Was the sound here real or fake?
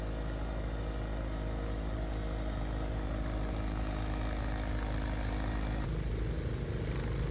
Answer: real